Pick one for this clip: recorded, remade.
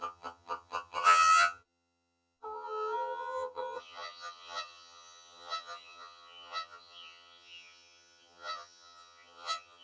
remade